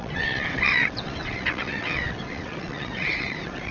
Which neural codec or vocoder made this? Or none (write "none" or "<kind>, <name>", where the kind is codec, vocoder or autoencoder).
vocoder, WaveNeXt